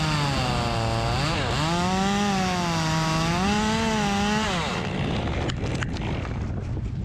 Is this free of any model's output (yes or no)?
yes